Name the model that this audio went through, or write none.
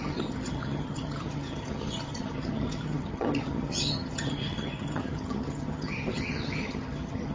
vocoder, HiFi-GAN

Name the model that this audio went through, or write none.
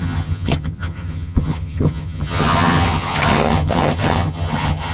vocoder, HiFi-GAN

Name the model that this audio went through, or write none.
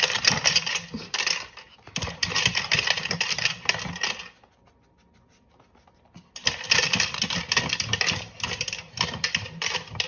none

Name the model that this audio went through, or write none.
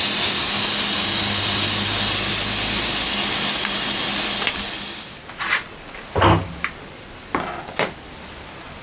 none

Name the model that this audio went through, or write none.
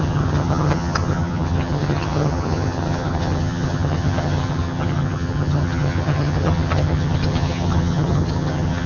vocoder, HiFi-GAN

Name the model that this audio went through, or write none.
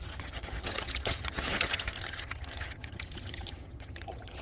vocoder, HiFi-GAN